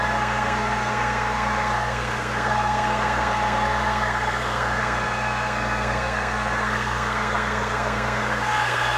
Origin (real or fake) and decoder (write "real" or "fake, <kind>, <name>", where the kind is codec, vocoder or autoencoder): fake, codec, SNAC